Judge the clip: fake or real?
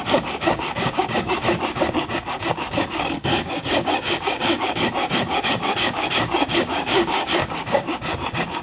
fake